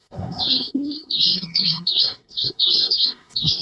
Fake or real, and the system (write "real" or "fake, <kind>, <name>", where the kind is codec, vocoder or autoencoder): fake, codec, SNAC